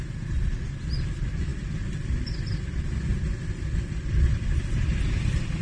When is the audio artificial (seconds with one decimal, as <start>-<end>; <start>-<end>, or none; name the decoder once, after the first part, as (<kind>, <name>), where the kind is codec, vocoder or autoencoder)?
none